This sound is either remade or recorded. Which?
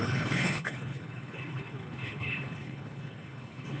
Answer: remade